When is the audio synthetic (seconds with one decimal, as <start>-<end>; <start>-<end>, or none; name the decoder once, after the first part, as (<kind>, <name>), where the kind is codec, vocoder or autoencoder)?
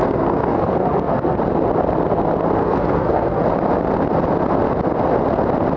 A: 0.0-1.4 (codec, SNAC); 2.6-3.4